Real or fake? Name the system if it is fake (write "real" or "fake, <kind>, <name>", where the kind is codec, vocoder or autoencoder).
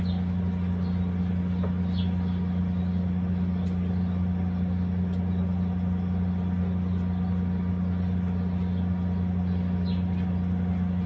real